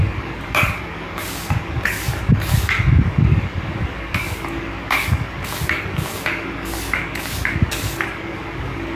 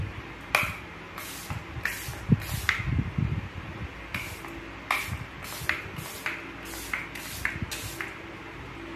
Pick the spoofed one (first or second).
first